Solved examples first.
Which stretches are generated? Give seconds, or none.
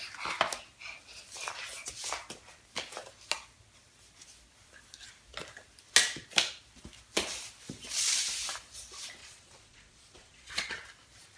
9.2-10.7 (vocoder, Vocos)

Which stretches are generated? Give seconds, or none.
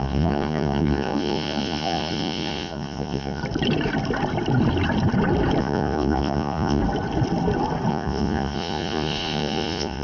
0.0-3.4 (vocoder, Vocos); 5.6-6.8; 7.9-10.0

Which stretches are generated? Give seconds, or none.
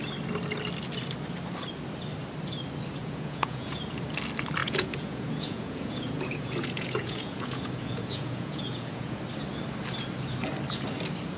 3.0-3.8 (vocoder, Vocos); 4.6-9.2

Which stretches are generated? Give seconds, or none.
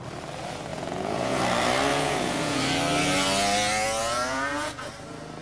0.7-1.4 (vocoder, Vocos); 1.9-2.6; 4.0-4.9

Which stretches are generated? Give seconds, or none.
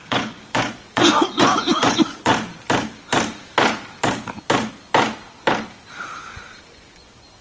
0.0-2.3 (vocoder, Vocos); 6.7-7.4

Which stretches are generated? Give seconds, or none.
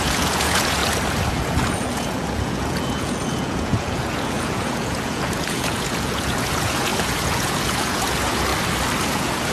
0.0-0.8 (vocoder, Vocos); 1.3-8.5; 9.0-9.5